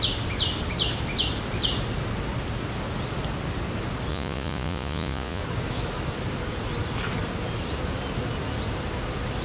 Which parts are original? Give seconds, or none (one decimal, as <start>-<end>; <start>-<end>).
0.0-4.1; 5.4-9.4